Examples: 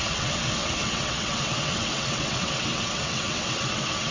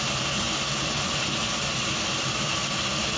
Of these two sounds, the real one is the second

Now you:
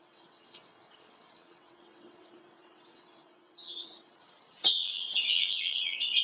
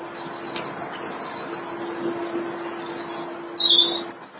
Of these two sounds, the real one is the second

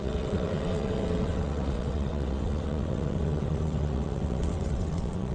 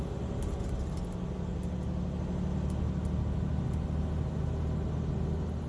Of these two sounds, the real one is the second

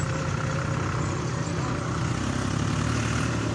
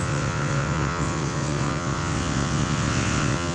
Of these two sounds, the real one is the first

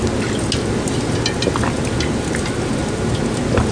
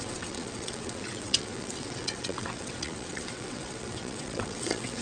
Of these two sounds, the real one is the first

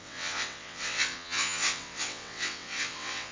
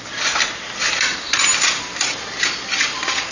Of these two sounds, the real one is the second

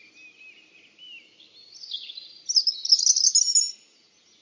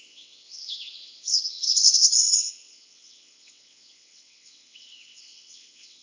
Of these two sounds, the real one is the first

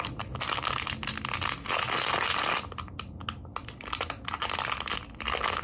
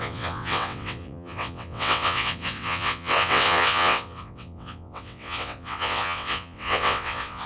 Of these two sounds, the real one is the first